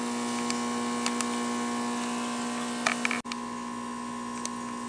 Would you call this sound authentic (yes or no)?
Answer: yes